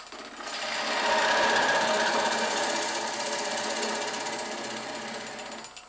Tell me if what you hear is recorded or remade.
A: recorded